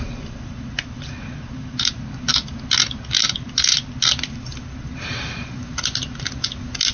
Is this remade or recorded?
recorded